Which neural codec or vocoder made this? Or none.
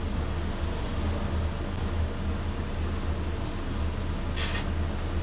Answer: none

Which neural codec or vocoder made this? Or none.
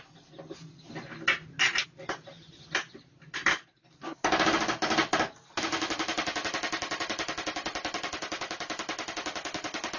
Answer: none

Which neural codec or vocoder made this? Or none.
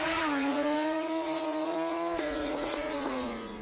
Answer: vocoder, Vocos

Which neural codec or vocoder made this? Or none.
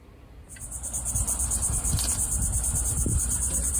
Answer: vocoder, BigVGAN v2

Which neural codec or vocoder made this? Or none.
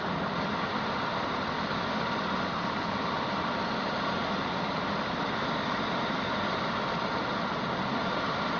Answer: vocoder, BigVGAN v2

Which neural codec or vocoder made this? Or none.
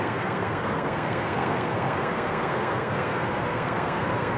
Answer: codec, SNAC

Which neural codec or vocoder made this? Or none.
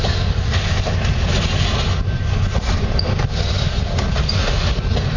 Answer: none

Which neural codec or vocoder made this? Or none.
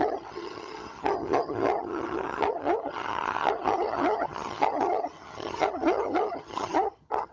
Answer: vocoder, HiFi-GAN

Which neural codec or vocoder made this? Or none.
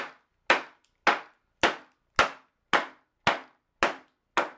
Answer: none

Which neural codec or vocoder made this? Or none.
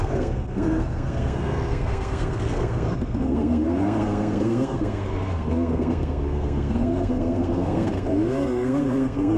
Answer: codec, SNAC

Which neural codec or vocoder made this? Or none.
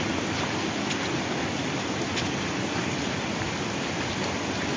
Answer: none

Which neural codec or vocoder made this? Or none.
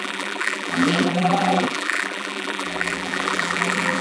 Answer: vocoder, BigVGAN v2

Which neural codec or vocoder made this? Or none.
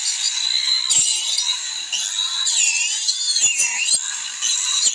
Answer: none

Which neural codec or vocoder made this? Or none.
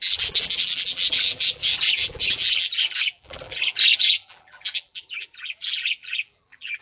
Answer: vocoder, BigVGAN v2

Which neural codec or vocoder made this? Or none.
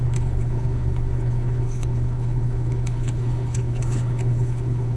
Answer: codec, HILCodec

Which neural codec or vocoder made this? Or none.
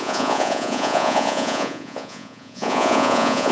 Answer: vocoder, Vocos